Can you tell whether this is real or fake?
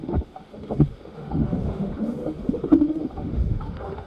fake